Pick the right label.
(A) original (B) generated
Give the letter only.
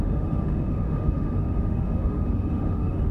B